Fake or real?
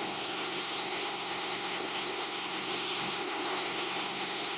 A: fake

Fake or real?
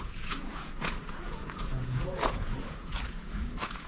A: fake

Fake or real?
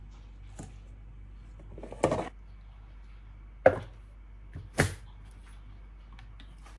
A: real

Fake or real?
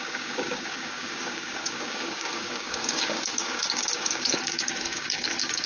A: fake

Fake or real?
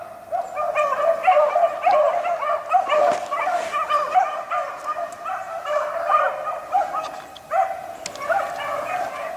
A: real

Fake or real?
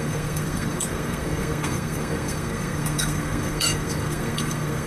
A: fake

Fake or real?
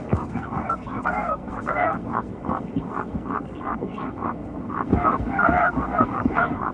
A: fake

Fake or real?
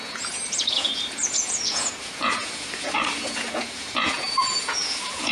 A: fake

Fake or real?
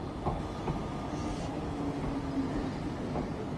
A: real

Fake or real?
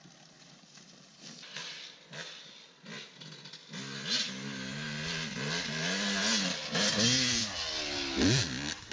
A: real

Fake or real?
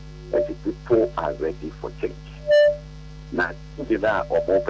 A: real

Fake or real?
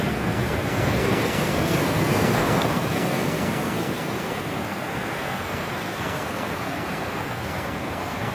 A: fake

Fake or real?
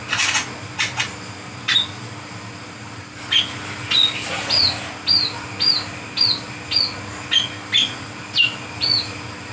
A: real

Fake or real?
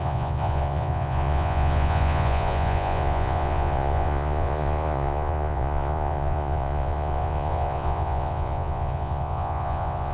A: fake